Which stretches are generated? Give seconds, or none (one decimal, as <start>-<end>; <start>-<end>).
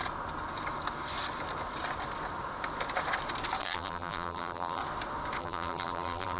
3.6-4.8; 5.4-6.4